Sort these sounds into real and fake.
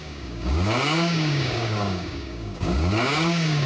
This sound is fake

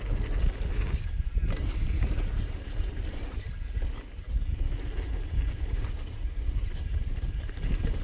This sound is real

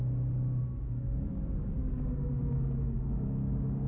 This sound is fake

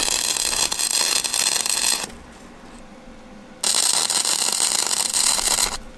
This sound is real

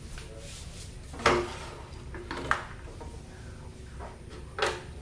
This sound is real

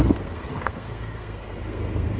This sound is fake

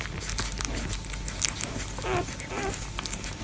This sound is real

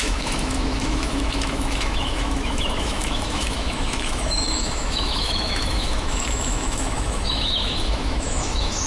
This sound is fake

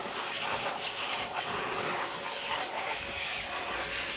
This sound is fake